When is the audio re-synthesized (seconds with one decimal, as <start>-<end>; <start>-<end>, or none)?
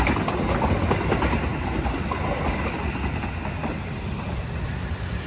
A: none